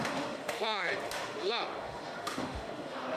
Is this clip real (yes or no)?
no